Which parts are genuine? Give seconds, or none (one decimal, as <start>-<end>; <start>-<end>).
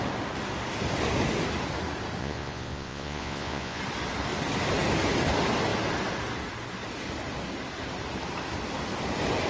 0.0-2.2; 3.8-9.5